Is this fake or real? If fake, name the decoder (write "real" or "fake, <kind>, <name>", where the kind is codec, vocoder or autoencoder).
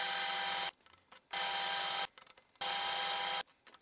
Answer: real